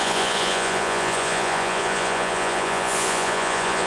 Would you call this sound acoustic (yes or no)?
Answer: no